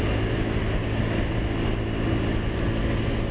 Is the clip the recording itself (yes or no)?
yes